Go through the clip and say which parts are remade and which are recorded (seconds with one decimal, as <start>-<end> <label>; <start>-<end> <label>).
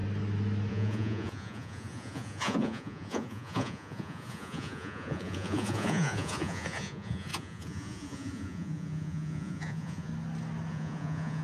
0.0-0.7 recorded; 0.7-10.1 remade; 10.1-10.7 recorded; 10.7-11.4 remade